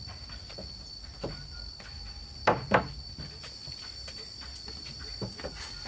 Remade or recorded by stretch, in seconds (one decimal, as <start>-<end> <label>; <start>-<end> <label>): 0.0-5.9 recorded